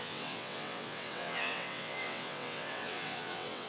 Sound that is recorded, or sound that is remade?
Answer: remade